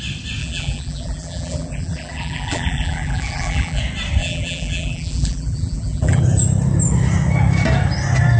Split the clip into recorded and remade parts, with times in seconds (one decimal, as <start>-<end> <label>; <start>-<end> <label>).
0.0-0.4 recorded; 0.4-3.8 remade; 3.8-4.2 recorded; 4.2-6.2 remade; 6.2-8.4 recorded